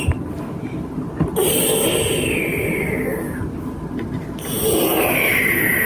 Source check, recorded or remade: recorded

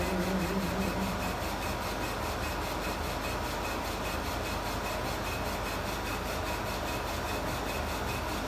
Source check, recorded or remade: recorded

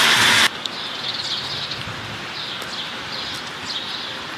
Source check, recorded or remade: recorded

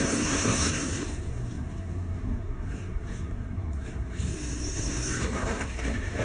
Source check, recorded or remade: remade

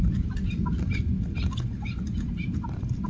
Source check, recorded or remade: recorded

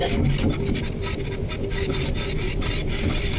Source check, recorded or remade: recorded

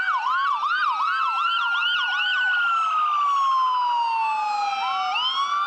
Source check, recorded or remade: recorded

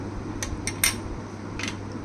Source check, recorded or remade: recorded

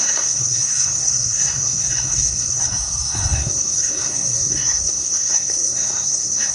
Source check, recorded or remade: remade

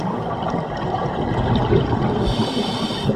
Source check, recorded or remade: recorded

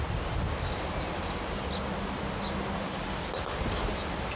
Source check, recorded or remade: recorded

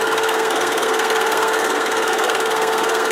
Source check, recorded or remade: remade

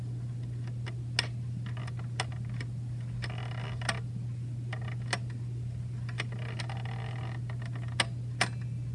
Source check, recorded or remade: recorded